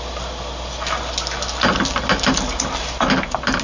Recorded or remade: recorded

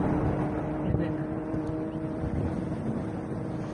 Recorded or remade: recorded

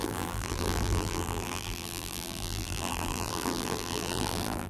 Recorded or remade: remade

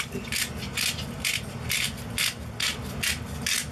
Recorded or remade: recorded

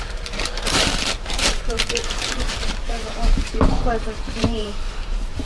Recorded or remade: remade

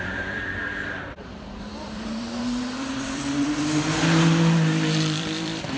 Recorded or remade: remade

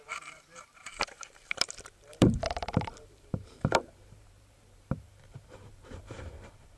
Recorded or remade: remade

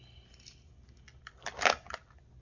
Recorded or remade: recorded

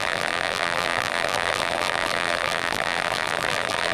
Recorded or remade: remade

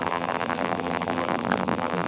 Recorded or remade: remade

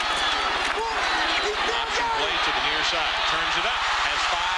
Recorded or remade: recorded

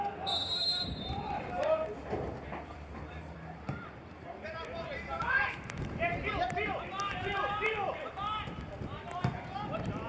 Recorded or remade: remade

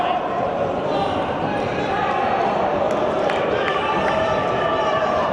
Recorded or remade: remade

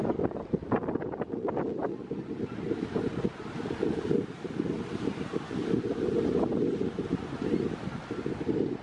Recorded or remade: recorded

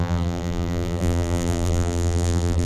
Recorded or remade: remade